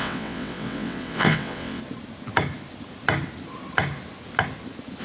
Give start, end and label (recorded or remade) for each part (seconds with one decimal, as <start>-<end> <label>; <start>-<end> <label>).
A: 0.0-1.8 remade; 1.8-5.0 recorded